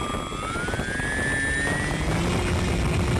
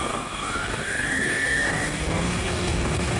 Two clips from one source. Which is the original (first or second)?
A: first